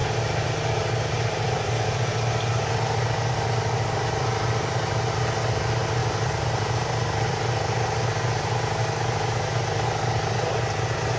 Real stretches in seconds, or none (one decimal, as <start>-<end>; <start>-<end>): 5.1-6.0; 8.8-11.2